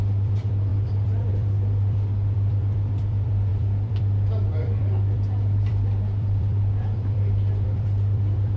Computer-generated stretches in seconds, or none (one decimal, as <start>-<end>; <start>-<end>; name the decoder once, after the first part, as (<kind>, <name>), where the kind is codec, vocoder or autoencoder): 0.0-8.6 (vocoder, BigVGAN v2)